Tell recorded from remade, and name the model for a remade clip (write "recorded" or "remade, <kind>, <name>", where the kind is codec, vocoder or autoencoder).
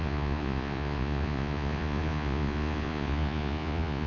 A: remade, vocoder, Vocos